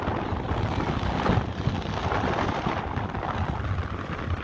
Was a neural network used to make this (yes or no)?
no